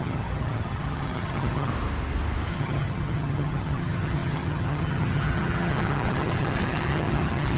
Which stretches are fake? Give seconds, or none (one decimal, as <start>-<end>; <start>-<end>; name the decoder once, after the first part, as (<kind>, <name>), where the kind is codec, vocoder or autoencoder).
0.0-1.7 (vocoder, HiFi-GAN); 2.5-7.6